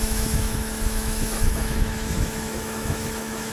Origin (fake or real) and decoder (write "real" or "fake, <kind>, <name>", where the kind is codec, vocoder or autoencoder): fake, autoencoder, DAC-VAE